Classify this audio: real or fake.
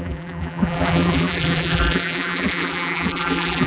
fake